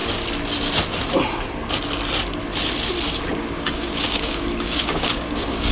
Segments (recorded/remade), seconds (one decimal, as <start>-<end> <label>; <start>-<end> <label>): 0.0-3.4 recorded; 3.4-5.7 remade